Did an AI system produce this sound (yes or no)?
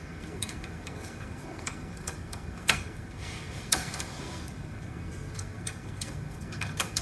yes